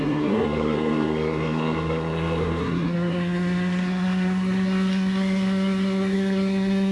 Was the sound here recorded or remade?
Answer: remade